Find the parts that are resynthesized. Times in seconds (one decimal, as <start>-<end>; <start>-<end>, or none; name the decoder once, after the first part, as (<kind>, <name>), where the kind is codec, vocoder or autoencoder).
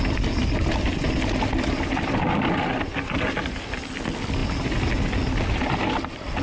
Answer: none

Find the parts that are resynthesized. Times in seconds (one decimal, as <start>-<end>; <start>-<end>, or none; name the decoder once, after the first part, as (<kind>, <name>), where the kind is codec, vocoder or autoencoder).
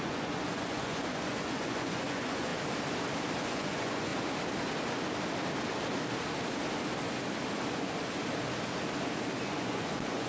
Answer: 0.0-2.5 (vocoder, Vocos); 3.4-4.1; 7.7-8.2; 9.4-10.3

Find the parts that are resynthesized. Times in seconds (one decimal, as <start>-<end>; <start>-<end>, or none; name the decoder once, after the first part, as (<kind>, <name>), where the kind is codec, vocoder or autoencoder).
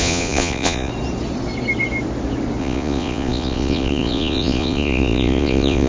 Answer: 0.0-0.9 (vocoder, Vocos); 2.6-5.9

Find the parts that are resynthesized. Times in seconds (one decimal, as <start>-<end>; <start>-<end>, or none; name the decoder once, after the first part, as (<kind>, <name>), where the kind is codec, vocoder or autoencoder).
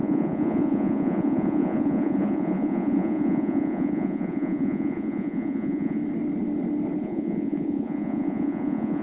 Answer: 0.0-6.0 (vocoder, Vocos); 7.0-9.0